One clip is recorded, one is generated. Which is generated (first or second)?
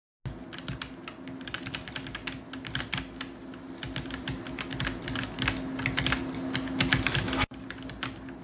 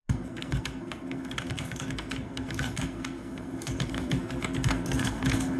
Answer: second